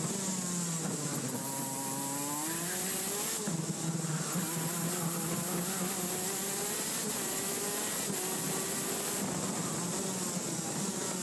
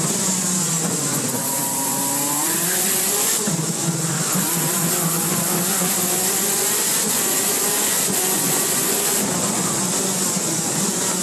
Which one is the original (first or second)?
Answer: first